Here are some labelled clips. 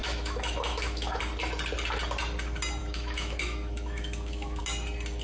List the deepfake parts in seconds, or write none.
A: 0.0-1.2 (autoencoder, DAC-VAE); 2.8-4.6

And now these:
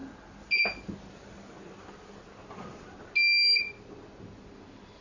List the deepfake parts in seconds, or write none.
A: none

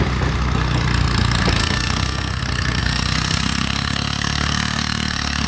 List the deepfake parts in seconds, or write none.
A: 1.6-2.4 (codec, SNAC); 2.8-5.5

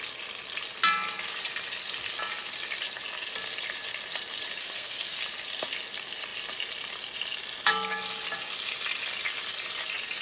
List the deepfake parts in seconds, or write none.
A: 4.6-5.2 (codec, SNAC)

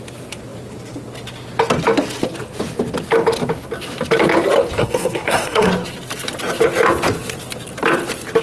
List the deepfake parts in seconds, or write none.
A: 4.8-5.7 (codec, SNAC)